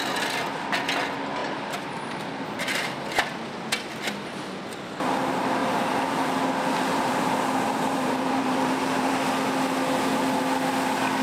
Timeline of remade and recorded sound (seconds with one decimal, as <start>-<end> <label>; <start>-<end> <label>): 0.0-5.6 recorded; 5.6-6.3 remade; 6.3-6.9 recorded; 6.9-9.1 remade; 9.1-11.2 recorded